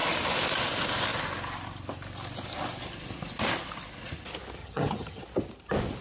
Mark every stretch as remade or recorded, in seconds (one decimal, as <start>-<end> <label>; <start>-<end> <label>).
0.0-4.6 recorded; 4.6-5.2 remade; 5.2-6.0 recorded